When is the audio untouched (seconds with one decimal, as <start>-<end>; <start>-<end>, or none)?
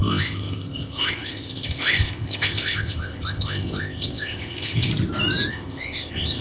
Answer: 4.9-5.5